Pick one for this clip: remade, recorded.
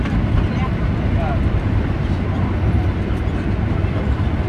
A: recorded